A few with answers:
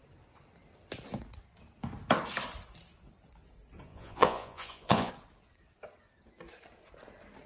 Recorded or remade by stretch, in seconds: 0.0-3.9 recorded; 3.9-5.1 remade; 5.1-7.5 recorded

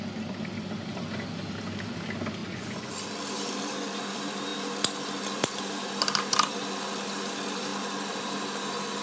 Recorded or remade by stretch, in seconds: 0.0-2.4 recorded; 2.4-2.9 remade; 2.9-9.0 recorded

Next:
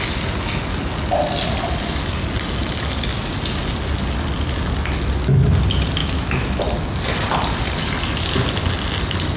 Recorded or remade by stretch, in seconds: 0.0-6.0 recorded; 6.0-6.6 remade; 6.6-9.4 recorded

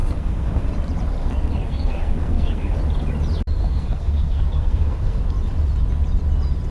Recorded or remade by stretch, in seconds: 0.0-0.7 remade; 0.7-1.2 recorded; 1.2-2.8 remade; 2.8-3.6 recorded; 3.6-5.2 remade; 5.2-6.7 recorded